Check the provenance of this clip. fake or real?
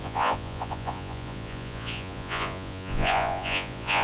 fake